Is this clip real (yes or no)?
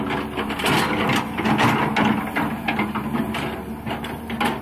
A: yes